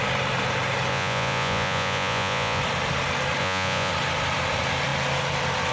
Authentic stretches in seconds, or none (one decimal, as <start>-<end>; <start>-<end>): 0.0-0.9; 2.6-3.4; 3.9-5.7

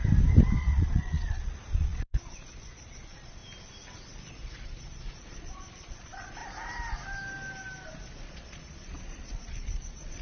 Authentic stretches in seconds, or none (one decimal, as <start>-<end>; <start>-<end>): 0.0-0.6; 3.4-4.3; 6.4-8.2

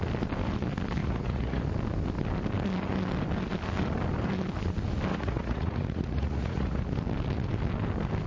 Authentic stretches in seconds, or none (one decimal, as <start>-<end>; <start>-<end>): 0.0-1.0; 1.6-5.1; 6.8-8.3

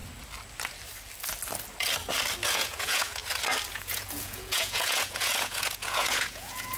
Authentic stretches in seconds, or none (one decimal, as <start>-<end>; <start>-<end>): 0.0-2.5; 3.2-3.7

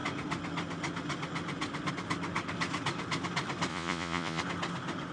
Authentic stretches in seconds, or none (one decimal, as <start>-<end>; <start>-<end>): 0.0-3.7; 4.4-5.1

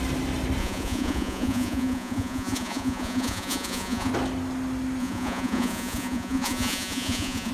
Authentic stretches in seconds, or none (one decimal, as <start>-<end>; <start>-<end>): 0.0-0.6; 4.1-5.0

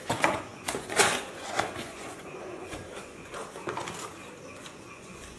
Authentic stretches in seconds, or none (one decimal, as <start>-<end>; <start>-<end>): 3.4-4.5